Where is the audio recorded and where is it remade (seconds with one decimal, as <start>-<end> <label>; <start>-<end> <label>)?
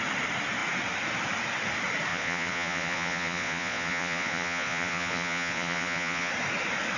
0.0-2.1 recorded; 2.1-6.3 remade; 6.3-7.0 recorded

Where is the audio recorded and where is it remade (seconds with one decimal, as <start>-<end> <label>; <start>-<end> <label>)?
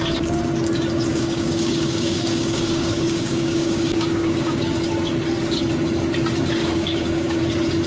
0.0-1.1 recorded; 1.1-4.9 remade; 4.9-6.6 recorded; 6.6-7.4 remade; 7.4-7.9 recorded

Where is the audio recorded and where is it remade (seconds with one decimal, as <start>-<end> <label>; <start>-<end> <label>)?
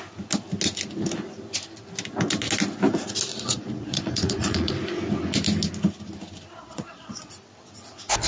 0.0-3.3 recorded; 3.3-4.7 remade; 4.7-6.6 recorded; 6.6-7.3 remade; 7.3-8.3 recorded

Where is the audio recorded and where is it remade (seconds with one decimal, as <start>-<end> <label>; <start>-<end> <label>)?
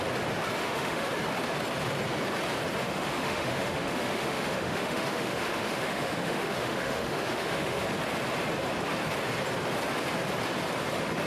0.0-0.6 recorded; 0.6-1.1 remade; 1.1-2.8 recorded; 2.8-7.8 remade; 7.8-11.3 recorded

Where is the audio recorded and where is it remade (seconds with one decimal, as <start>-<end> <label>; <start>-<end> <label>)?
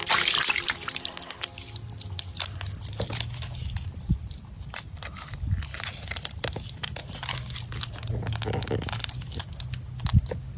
0.0-10.6 recorded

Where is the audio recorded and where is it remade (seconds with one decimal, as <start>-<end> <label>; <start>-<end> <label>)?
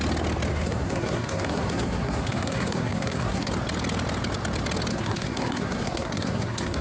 0.0-0.5 recorded; 0.5-3.5 remade; 3.5-4.9 recorded; 4.9-6.8 remade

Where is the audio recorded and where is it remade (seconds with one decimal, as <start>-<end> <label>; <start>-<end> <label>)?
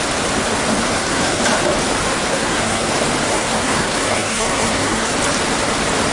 0.0-0.8 recorded; 0.8-1.4 remade; 1.4-2.3 recorded; 2.3-2.9 remade; 2.9-3.3 recorded; 3.3-5.1 remade; 5.1-6.1 recorded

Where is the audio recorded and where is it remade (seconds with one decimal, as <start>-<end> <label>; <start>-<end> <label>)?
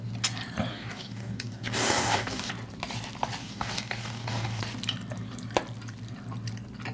0.0-0.7 recorded; 0.7-2.5 remade; 2.5-3.4 recorded; 3.4-4.6 remade; 4.6-6.9 recorded